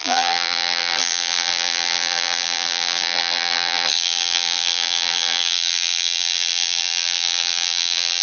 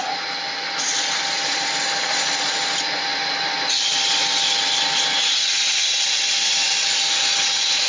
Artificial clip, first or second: first